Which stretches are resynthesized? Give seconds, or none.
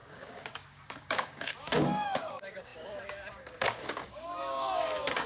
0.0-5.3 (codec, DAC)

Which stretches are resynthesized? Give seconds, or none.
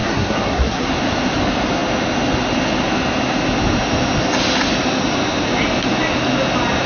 0.0-0.9 (codec, SNAC)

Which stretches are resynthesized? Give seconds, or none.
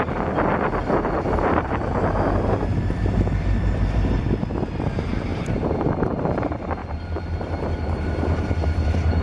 1.0-4.4 (vocoder, BigVGAN v2); 5.3-6.2; 6.8-9.2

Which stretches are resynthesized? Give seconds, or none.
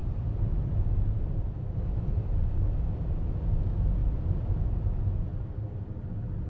0.0-3.3 (vocoder, BigVGAN v2); 4.0-4.6; 5.3-6.1